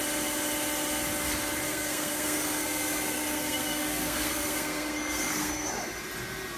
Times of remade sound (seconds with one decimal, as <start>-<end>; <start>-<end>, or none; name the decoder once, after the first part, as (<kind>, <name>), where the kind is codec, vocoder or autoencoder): 1.7-5.7 (codec, SNAC)